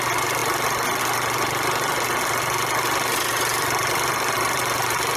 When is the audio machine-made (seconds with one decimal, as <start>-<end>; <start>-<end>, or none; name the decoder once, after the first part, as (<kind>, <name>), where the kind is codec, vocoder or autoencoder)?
3.5-5.2 (vocoder, BigVGAN v2)